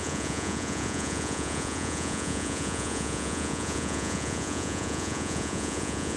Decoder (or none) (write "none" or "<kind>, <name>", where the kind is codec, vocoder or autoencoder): vocoder, Vocos